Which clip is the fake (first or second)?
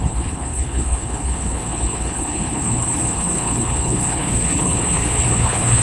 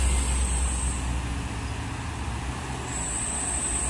first